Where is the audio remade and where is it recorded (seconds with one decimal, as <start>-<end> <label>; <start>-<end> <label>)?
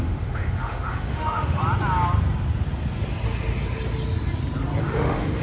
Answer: 0.0-1.6 remade; 1.6-4.8 recorded; 4.8-5.4 remade